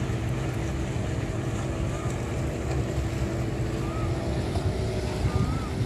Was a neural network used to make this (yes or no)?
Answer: no